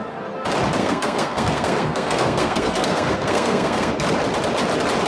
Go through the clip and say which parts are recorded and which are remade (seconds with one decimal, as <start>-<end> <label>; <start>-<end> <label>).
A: 0.0-0.8 recorded; 0.8-3.9 remade; 3.9-5.1 recorded